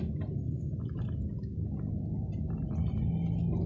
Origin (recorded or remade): recorded